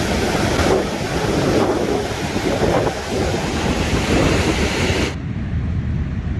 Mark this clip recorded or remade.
recorded